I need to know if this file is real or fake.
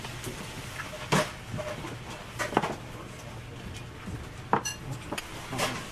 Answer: real